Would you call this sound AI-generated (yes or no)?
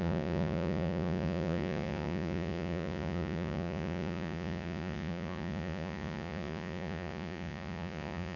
yes